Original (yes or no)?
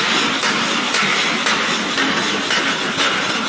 yes